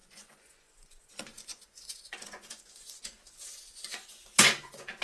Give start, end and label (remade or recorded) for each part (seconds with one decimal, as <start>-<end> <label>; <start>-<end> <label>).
0.0-5.0 remade